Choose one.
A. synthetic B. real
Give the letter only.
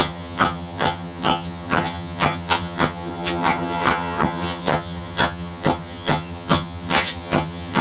A